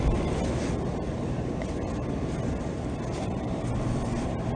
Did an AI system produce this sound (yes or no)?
no